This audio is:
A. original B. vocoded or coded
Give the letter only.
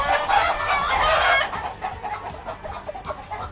A